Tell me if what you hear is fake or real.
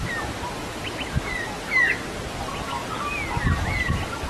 real